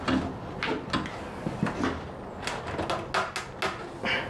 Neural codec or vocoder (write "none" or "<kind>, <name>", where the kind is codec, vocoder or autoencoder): none